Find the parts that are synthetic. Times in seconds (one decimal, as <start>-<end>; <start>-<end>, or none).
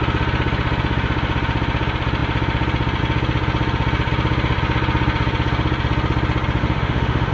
6.6-7.3